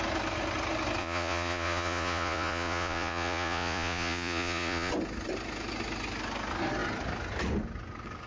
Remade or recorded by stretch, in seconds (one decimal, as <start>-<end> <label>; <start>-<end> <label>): 0.0-1.0 recorded; 1.0-4.9 remade; 4.9-8.3 recorded